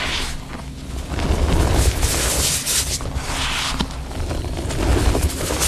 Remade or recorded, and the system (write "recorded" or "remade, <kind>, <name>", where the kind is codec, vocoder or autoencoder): recorded